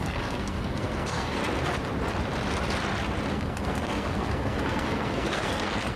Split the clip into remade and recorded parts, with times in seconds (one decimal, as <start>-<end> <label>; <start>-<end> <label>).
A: 0.0-1.4 remade; 1.4-3.3 recorded; 3.3-6.0 remade